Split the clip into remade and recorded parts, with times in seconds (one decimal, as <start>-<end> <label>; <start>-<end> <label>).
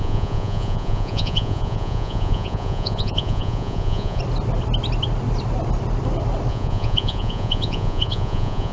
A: 0.0-4.2 remade; 4.2-6.5 recorded; 6.5-8.7 remade